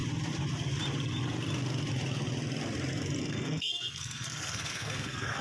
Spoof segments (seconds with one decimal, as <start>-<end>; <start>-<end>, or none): 3.2-5.4